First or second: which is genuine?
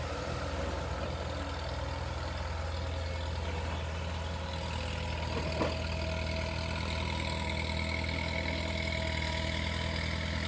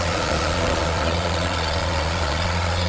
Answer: first